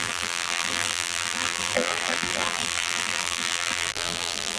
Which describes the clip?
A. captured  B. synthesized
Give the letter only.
B